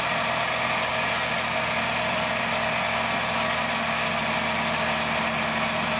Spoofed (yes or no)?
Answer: no